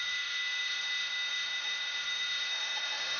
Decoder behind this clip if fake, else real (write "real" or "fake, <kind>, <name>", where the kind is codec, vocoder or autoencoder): fake, autoencoder, DAC-VAE